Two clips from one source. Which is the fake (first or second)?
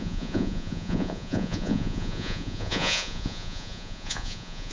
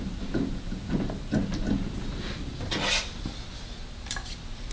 first